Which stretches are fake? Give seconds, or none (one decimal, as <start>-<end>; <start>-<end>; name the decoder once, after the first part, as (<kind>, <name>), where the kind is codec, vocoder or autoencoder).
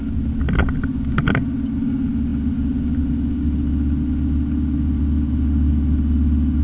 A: none